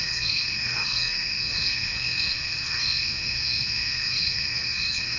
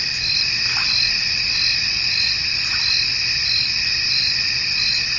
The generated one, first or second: first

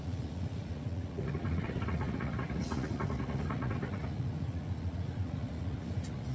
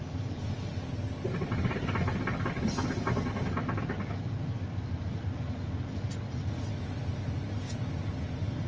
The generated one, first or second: first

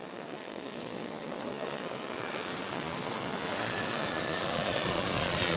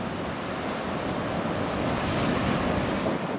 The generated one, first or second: first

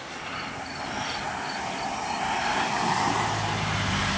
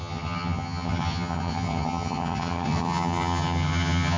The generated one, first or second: second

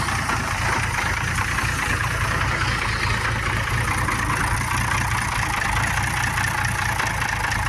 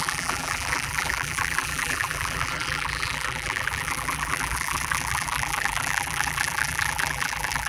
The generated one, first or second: second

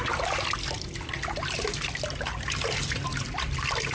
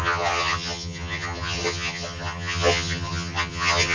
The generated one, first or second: second